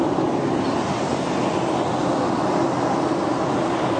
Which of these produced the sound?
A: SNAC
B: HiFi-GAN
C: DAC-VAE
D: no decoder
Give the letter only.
D